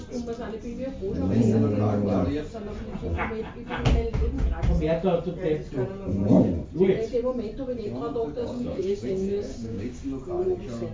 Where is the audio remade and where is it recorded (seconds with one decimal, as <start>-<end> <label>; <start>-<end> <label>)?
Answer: 0.0-8.4 recorded; 8.4-10.0 remade; 10.0-10.9 recorded